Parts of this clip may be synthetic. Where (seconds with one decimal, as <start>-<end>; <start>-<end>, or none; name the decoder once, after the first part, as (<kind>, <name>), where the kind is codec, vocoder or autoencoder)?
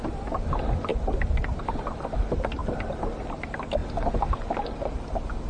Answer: none